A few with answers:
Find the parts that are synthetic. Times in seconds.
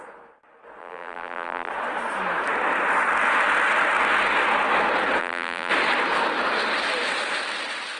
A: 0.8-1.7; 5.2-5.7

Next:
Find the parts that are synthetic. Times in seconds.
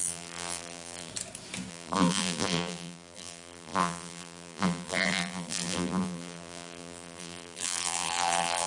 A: 0.0-1.1; 1.7-8.7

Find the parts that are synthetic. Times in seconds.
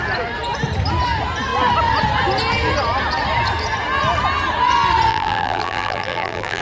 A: 5.1-6.6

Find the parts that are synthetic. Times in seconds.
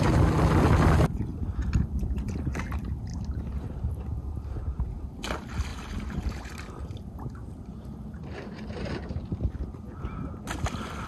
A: 1.3-2.4; 3.1-5.1; 5.7-6.8; 7.4-9.8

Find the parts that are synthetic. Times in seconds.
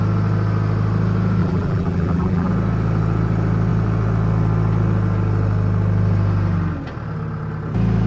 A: 1.4-2.5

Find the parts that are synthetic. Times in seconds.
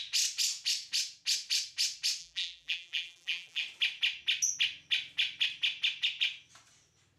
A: 2.2-3.6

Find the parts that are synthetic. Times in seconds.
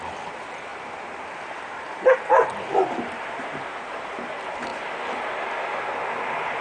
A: 0.7-4.3